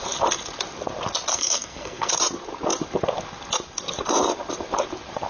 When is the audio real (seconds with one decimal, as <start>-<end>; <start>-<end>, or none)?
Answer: 0.0-1.3; 2.1-5.3